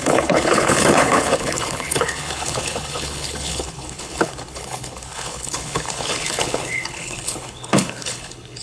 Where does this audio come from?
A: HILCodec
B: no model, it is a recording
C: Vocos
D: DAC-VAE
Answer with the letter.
A